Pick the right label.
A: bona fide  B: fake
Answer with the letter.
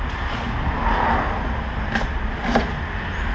A